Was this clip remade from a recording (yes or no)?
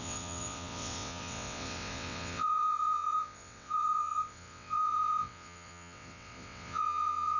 yes